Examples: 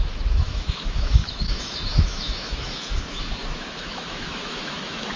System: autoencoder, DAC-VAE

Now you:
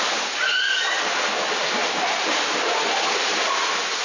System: none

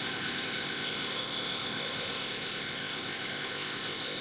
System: codec, ZipCodec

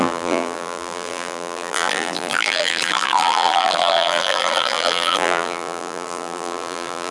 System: vocoder, BigVGAN v2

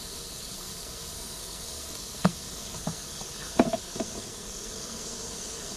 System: codec, SNAC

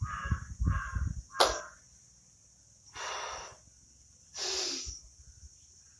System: none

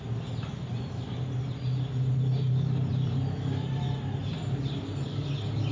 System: none